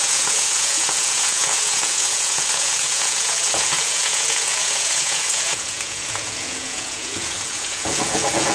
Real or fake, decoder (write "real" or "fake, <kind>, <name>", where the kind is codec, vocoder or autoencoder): fake, vocoder, Vocos